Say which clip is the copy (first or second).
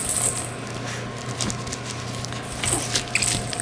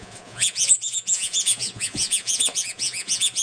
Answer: second